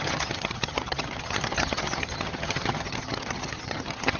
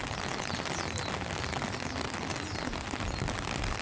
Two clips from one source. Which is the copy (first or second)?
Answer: first